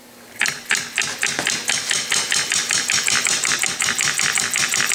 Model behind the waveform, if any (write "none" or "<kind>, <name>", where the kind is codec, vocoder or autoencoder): none